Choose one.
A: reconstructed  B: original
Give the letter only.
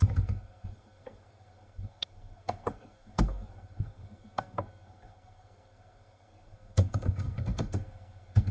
A